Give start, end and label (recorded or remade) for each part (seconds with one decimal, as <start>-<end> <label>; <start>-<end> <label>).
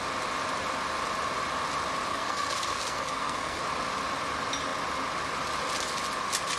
0.0-2.1 recorded; 2.1-3.6 remade; 3.6-6.6 recorded